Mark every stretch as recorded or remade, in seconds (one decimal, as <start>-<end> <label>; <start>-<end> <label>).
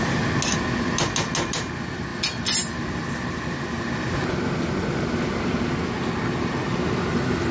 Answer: 0.0-7.5 recorded